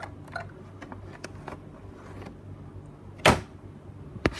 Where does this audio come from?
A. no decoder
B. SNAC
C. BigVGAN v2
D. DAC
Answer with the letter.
A